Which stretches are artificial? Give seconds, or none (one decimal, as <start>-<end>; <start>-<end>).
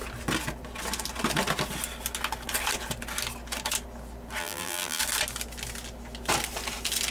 4.4-5.0